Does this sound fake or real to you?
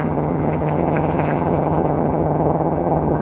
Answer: fake